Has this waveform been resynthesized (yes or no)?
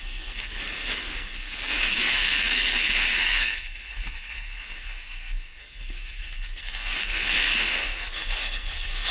yes